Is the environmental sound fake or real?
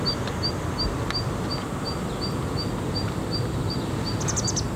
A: real